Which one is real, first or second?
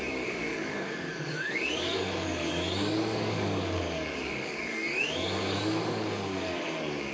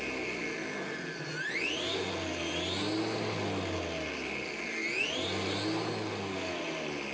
second